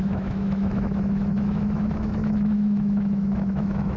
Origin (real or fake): fake